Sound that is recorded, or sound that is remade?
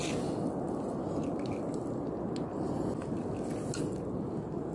recorded